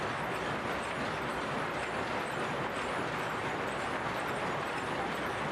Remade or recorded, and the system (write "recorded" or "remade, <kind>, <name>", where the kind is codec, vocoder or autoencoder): recorded